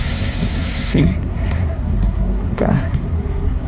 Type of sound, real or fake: fake